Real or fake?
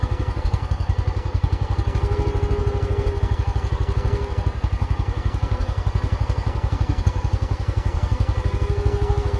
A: fake